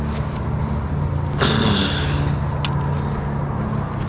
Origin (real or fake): real